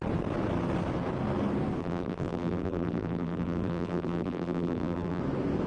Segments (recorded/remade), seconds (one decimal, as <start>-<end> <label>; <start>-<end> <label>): 0.0-1.8 recorded; 1.8-5.2 remade; 5.2-5.7 recorded